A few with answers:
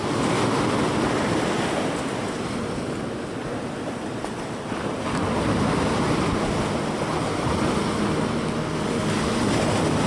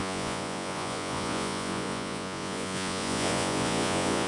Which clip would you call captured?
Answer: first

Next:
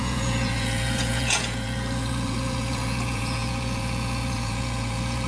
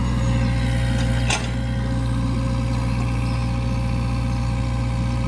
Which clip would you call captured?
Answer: second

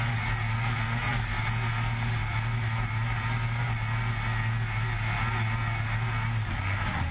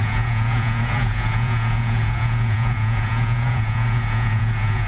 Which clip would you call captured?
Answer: first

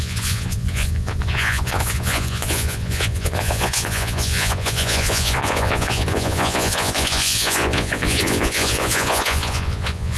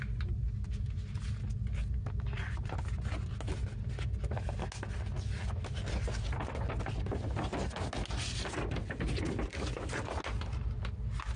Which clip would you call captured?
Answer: second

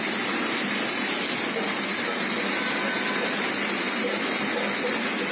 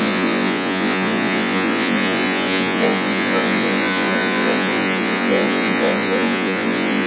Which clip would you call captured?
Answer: first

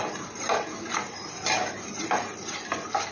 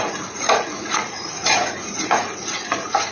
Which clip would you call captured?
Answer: first